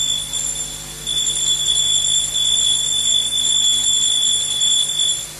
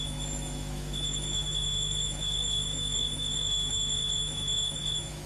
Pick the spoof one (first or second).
second